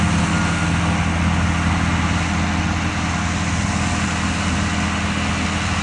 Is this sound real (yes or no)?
yes